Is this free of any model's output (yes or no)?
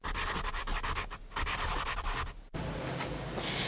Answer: yes